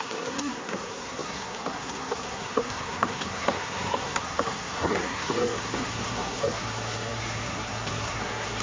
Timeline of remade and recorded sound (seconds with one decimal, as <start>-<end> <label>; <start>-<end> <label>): 0.0-8.6 remade